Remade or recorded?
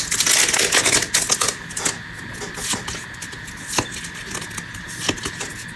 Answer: recorded